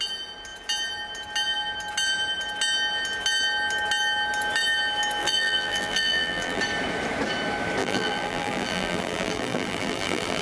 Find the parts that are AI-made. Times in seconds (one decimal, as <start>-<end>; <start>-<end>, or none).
5.2-6.6; 7.8-10.4